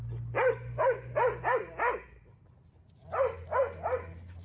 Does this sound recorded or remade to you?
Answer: recorded